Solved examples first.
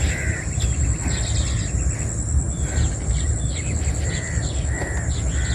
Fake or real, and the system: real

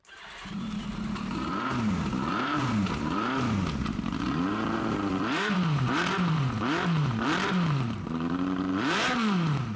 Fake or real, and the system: fake, vocoder, BigVGAN v2